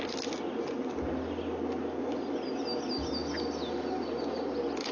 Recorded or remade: recorded